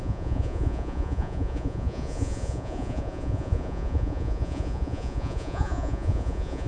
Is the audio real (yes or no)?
no